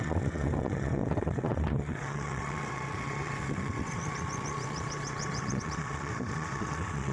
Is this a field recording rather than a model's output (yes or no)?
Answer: no